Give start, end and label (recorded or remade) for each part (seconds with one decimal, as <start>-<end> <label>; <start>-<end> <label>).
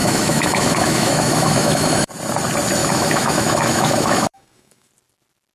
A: 0.0-2.1 remade; 2.1-2.8 recorded; 2.8-4.9 remade; 4.9-5.5 recorded